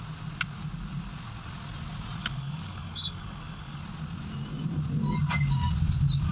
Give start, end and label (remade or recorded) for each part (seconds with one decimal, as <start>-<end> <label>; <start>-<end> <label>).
0.0-2.2 recorded; 2.2-3.8 remade; 3.8-6.3 recorded